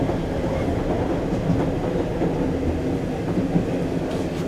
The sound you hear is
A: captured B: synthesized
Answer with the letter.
A